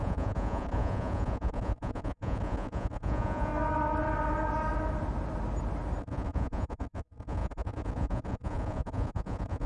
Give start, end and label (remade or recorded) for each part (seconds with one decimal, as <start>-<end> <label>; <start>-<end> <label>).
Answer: 0.0-3.5 remade; 3.5-6.0 recorded; 6.0-9.7 remade